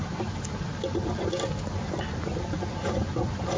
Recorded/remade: recorded